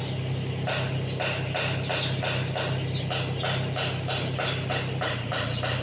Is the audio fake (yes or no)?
no